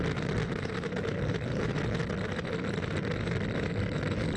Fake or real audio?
real